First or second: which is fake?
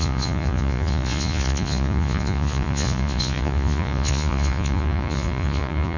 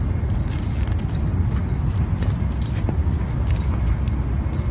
first